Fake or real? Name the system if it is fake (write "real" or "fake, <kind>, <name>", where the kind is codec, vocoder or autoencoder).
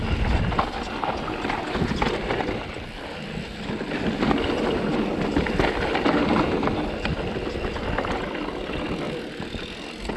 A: real